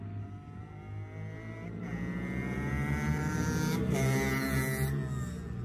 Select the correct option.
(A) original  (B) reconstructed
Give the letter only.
A